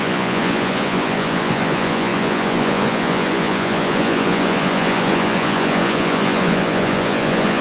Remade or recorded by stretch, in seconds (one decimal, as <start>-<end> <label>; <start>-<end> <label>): 0.0-7.6 remade